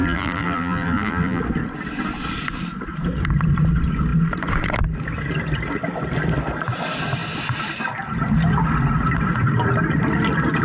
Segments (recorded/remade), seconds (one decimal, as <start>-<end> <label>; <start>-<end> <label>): 0.0-1.4 remade; 1.4-10.6 recorded